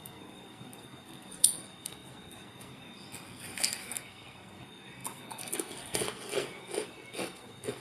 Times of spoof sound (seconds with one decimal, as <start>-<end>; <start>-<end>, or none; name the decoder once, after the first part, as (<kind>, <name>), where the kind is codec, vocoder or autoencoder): 0.0-7.8 (codec, SNAC)